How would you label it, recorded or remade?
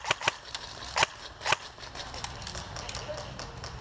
recorded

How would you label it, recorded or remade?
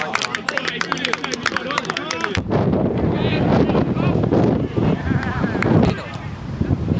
remade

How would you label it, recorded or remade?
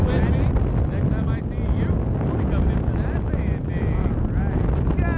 recorded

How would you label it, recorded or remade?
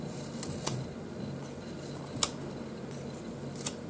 recorded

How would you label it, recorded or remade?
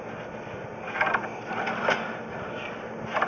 recorded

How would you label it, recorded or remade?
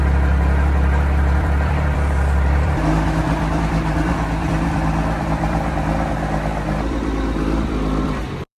remade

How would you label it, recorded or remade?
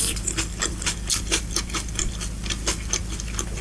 remade